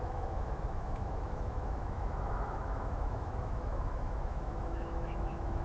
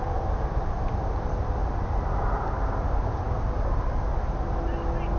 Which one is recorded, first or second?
second